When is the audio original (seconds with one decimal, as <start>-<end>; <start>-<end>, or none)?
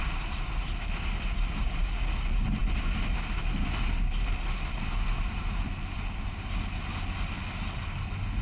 0.0-8.4